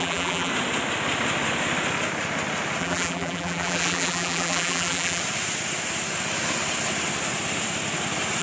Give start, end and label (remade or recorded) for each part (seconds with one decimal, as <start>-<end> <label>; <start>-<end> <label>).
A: 0.0-0.5 remade; 0.5-2.8 recorded; 2.8-5.2 remade; 5.2-8.4 recorded